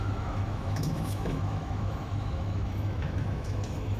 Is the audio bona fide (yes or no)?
no